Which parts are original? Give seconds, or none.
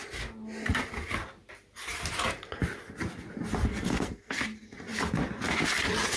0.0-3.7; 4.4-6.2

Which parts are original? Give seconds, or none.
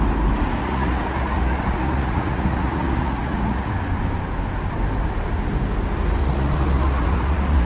0.0-0.6; 3.7-6.2